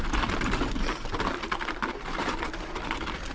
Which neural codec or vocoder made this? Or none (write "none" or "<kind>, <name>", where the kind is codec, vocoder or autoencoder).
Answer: none